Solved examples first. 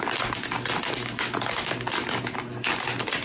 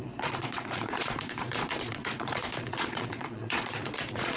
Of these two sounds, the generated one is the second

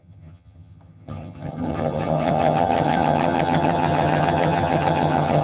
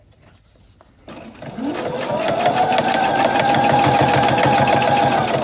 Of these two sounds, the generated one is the first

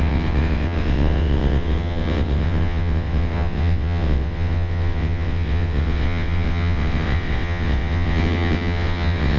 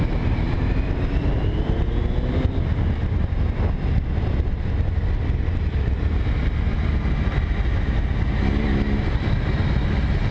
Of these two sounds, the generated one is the first